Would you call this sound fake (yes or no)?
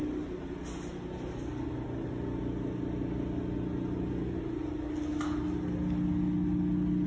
no